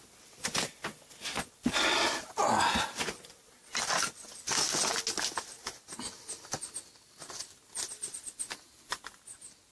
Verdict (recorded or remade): recorded